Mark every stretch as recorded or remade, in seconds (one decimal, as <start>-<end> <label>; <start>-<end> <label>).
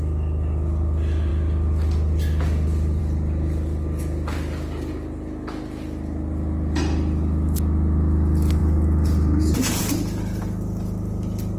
0.0-11.6 recorded